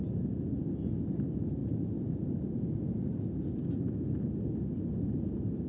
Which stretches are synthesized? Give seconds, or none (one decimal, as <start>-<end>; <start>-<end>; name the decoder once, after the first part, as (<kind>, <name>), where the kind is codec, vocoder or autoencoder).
none